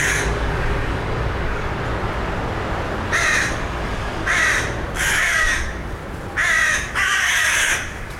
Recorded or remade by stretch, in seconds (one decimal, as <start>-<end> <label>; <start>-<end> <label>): 0.0-1.7 remade; 1.7-3.5 recorded; 3.5-4.1 remade; 4.1-5.1 recorded; 5.1-6.0 remade; 6.0-6.7 recorded; 6.7-8.2 remade